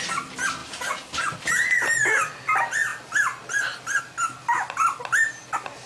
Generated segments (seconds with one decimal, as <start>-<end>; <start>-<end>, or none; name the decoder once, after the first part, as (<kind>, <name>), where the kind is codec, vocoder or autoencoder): none